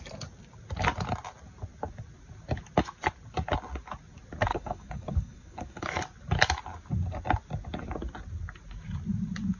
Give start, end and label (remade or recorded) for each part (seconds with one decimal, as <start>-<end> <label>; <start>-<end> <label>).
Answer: 0.0-4.5 recorded; 4.5-6.0 remade; 6.0-9.6 recorded

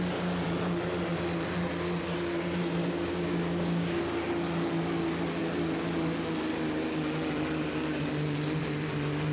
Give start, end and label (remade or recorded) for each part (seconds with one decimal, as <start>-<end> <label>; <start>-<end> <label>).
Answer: 0.0-2.8 recorded; 2.8-4.0 remade; 4.0-9.3 recorded